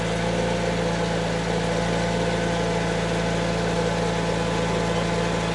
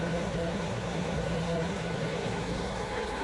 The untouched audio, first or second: first